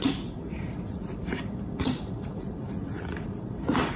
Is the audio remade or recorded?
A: remade